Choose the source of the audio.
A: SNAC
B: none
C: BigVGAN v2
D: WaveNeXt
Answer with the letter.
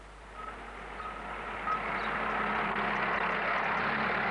B